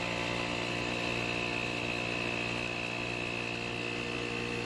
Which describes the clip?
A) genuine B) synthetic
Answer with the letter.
A